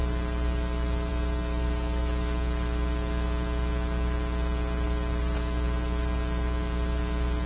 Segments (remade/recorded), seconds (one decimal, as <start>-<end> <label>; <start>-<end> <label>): 0.0-7.5 recorded